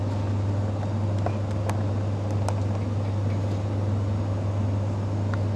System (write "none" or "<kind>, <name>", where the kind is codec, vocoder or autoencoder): none